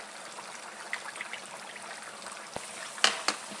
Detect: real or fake real